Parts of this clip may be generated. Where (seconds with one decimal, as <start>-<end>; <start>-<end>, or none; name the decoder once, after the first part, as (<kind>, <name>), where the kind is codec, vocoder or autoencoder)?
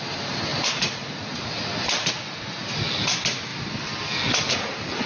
none